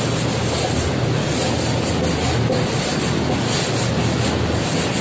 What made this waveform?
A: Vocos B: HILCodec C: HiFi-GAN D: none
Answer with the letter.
D